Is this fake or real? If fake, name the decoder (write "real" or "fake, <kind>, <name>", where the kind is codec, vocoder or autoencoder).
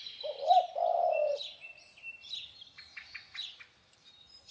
fake, vocoder, BigVGAN v2